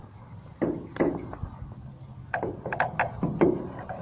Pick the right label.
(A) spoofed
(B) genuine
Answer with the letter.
B